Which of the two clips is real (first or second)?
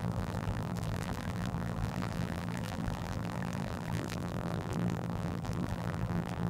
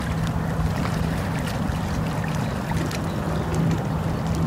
second